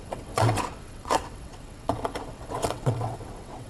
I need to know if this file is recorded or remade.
remade